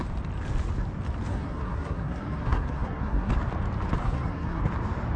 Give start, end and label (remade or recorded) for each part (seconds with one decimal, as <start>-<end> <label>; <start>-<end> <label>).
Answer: 0.0-1.3 recorded; 1.3-3.3 remade; 3.3-4.0 recorded; 4.0-4.6 remade; 4.6-5.2 recorded